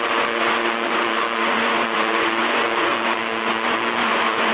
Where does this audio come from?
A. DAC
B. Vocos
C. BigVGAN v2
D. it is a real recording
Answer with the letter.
B